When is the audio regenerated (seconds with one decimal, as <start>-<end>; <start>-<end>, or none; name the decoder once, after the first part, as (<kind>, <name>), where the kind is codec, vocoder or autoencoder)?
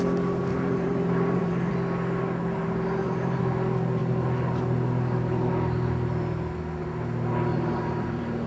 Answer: 0.5-1.7 (vocoder, BigVGAN v2); 2.4-3.4; 7.5-8.5